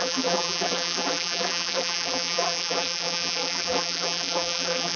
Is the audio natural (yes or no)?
no